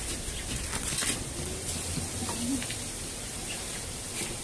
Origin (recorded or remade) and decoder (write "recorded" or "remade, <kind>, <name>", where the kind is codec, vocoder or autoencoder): recorded